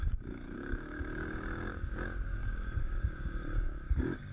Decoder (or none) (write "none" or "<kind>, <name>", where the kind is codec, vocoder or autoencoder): codec, DAC